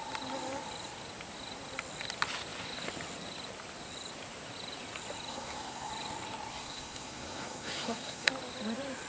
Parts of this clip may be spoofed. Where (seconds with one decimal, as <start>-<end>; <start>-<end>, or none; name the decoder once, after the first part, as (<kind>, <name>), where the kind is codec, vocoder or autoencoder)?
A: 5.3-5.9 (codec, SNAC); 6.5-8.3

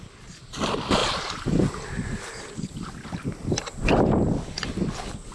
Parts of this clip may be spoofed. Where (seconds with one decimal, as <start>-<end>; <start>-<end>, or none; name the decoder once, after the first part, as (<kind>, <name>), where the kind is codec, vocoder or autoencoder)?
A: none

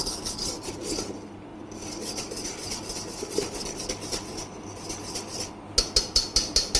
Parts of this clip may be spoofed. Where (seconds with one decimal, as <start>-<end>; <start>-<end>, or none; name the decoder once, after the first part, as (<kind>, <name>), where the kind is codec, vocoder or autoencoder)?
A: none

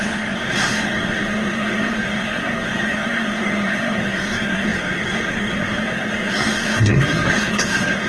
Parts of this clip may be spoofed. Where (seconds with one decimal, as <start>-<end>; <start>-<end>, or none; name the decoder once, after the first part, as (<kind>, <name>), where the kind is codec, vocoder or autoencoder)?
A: 0.0-8.1 (codec, SNAC)

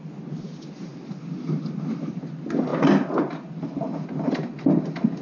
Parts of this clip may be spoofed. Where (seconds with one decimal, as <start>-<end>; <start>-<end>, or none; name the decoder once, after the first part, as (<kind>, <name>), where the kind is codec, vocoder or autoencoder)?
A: none

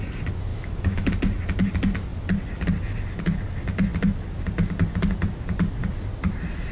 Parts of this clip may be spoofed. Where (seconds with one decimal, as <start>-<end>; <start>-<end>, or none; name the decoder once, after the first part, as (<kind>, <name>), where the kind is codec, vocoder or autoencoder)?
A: 0.5-1.1 (autoencoder, DAC-VAE)